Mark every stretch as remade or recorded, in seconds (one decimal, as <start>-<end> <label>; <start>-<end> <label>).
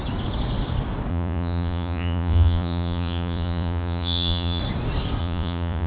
0.0-1.1 recorded; 1.1-4.6 remade; 4.6-5.2 recorded; 5.2-5.9 remade